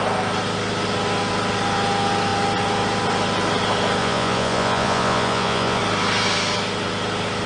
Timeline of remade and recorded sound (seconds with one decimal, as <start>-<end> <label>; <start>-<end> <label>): 0.0-4.0 recorded; 4.0-5.8 remade; 5.8-7.5 recorded